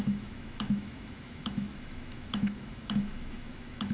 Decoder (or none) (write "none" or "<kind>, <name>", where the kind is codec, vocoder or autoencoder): autoencoder, DAC-VAE